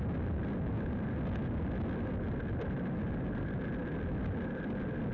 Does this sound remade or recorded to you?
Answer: recorded